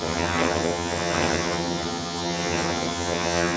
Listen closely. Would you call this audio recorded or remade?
remade